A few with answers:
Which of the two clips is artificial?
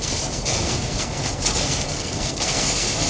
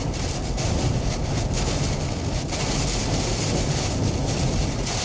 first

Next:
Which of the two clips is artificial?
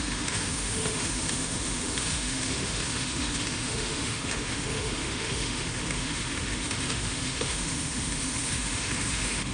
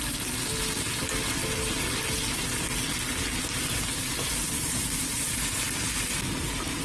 first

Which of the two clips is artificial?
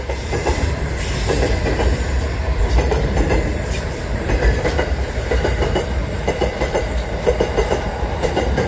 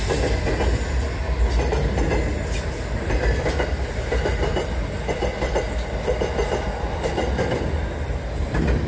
first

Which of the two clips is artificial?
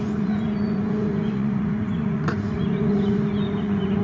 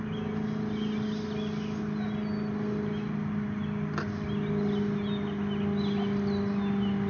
first